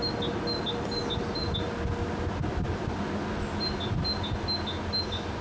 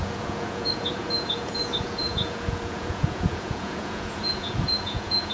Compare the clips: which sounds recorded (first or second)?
first